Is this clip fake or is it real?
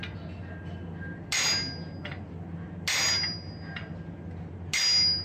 real